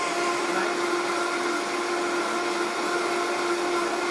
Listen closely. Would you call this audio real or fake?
real